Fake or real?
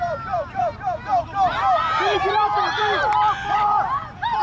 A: fake